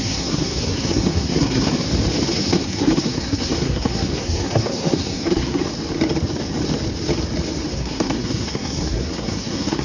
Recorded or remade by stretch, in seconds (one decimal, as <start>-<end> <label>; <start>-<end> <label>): 0.0-1.7 remade; 1.7-2.3 recorded; 2.3-5.6 remade; 5.6-7.7 recorded; 7.7-9.8 remade